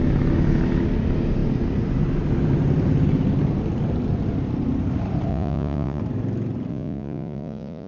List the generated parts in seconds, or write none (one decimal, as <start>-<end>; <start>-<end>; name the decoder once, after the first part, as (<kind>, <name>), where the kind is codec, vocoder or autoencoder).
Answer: 5.3-6.0 (vocoder, Vocos); 6.7-7.9